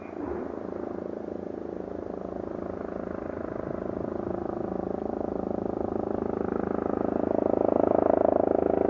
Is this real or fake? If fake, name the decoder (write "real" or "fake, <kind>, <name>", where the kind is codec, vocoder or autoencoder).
real